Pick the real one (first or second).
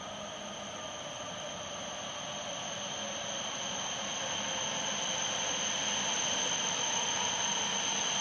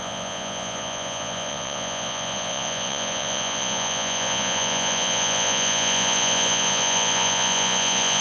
first